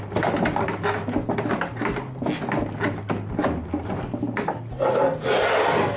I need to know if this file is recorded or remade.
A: recorded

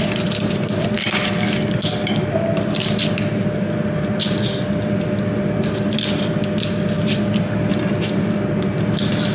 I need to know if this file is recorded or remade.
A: recorded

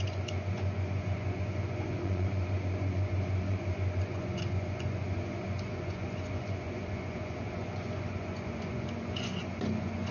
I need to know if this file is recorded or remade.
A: remade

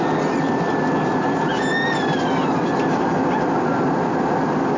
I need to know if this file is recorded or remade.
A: recorded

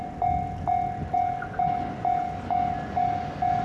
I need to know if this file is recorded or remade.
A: recorded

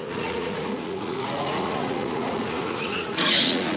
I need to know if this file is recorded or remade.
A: remade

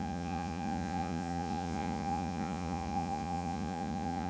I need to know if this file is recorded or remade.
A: remade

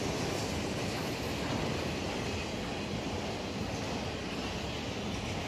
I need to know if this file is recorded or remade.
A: recorded